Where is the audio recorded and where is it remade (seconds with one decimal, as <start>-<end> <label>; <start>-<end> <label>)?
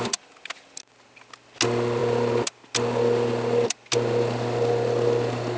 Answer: 0.0-5.6 recorded